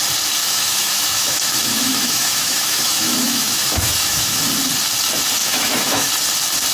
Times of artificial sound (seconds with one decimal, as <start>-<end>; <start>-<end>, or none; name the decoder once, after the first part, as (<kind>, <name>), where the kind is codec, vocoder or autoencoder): 0.4-4.4 (autoencoder, DAC-VAE); 5.4-6.1